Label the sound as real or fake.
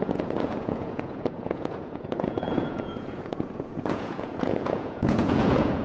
fake